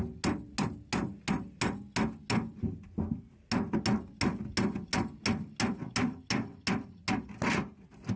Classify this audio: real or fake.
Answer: real